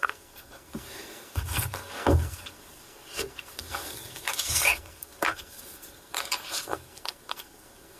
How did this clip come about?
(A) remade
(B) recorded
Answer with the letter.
A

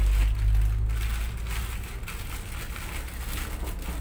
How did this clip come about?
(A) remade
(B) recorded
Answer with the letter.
B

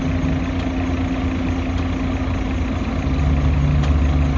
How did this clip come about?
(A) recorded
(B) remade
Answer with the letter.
A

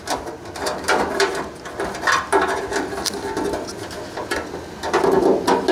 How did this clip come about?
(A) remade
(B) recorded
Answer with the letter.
B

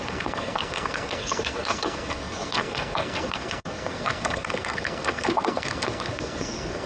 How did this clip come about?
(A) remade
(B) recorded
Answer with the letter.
A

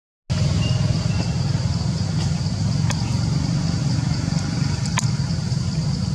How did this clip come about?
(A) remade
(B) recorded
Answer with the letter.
B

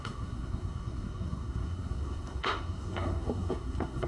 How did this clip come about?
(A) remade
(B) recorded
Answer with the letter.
A